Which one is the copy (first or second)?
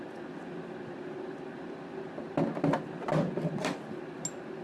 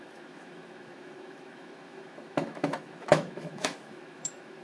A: second